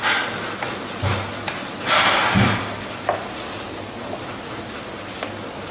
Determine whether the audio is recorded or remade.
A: recorded